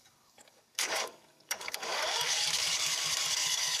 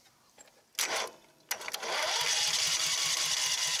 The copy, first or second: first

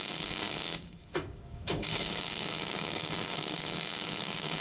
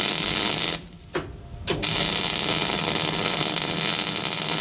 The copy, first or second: first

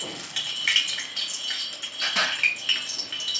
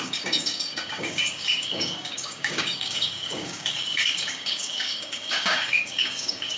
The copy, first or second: second